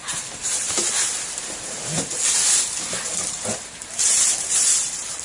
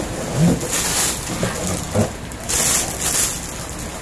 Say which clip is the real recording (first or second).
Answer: second